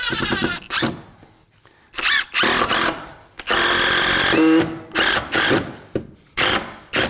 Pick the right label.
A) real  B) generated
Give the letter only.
A